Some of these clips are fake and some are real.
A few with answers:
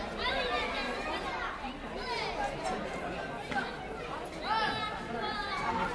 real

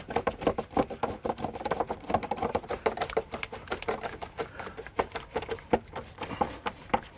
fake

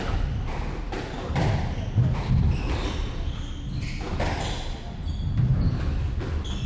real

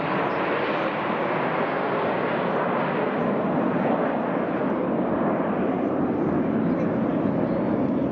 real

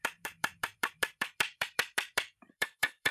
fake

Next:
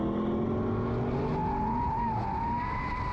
real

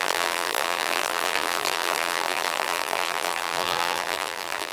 fake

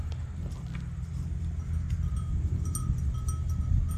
real